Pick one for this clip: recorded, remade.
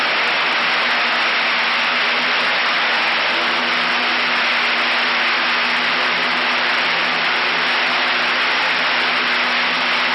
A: recorded